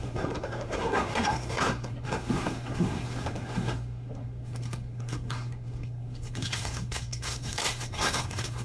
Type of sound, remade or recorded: remade